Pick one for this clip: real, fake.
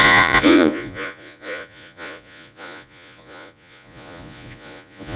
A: fake